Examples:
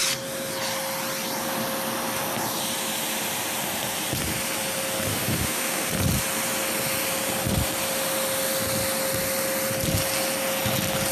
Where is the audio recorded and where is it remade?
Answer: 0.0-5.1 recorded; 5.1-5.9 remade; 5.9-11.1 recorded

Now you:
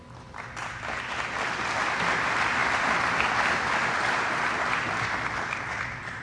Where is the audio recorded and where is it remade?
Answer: 0.0-6.2 recorded